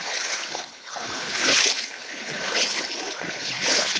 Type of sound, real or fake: fake